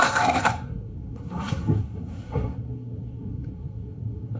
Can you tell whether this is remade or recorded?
remade